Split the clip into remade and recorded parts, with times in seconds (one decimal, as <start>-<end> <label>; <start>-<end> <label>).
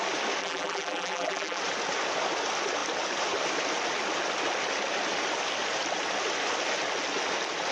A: 0.0-0.4 recorded; 0.4-1.6 remade; 1.6-7.7 recorded